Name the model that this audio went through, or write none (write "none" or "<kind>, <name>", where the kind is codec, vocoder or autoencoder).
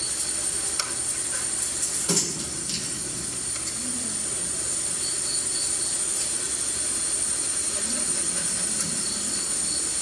none